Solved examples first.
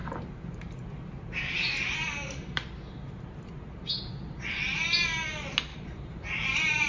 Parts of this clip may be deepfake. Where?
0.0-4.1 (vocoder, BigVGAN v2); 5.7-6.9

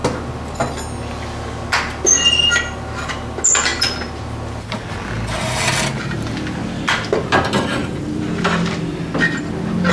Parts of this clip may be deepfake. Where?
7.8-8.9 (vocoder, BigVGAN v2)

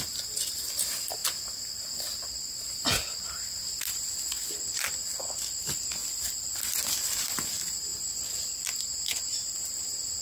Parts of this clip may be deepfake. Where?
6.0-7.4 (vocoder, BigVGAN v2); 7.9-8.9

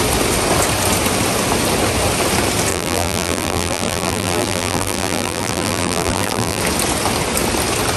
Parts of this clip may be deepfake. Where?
2.7-6.6 (vocoder, BigVGAN v2)

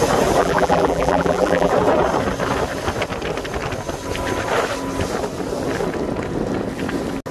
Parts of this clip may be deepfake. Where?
0.4-1.7 (vocoder, BigVGAN v2)

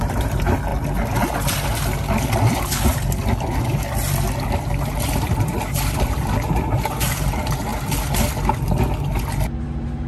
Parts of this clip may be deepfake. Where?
0.0-0.7 (vocoder, BigVGAN v2); 5.2-7.7; 9.6-10.1

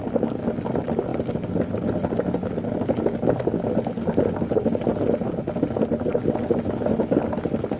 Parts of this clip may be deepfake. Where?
none

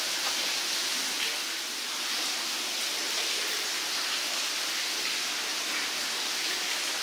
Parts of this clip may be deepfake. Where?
none